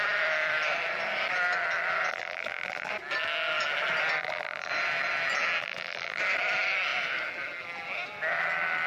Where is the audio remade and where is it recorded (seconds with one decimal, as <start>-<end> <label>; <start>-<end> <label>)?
0.0-2.1 recorded; 2.1-2.9 remade; 2.9-4.2 recorded; 4.2-4.7 remade; 4.7-5.6 recorded; 5.6-6.2 remade; 6.2-8.9 recorded